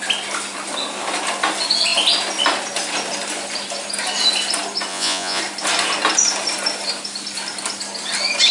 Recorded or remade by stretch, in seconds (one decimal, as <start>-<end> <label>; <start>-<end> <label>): 0.0-4.9 recorded; 4.9-5.4 remade; 5.4-8.5 recorded